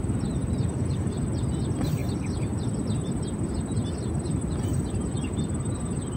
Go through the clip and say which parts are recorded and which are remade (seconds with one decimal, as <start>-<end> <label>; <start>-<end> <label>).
0.0-0.4 recorded; 0.4-1.2 remade; 1.2-2.0 recorded; 2.0-5.7 remade; 5.7-6.2 recorded